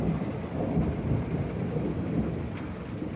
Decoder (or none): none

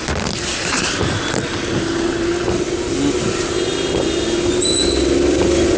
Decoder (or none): none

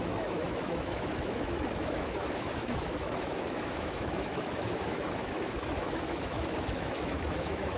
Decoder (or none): autoencoder, DAC-VAE